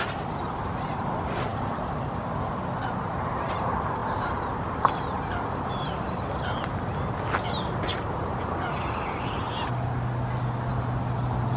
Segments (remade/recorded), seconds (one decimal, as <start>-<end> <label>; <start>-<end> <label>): 0.0-11.6 recorded